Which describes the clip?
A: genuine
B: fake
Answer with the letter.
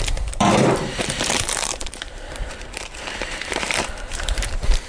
B